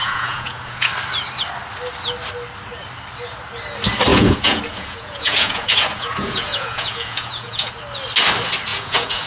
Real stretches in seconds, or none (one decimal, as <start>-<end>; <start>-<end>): 0.9-4.1; 7.7-8.7